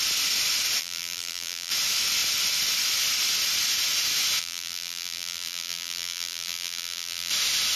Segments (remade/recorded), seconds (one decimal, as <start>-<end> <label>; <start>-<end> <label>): 0.0-0.8 recorded; 0.8-1.7 remade; 1.7-4.4 recorded; 4.4-7.3 remade; 7.3-7.8 recorded